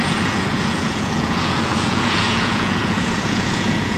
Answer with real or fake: fake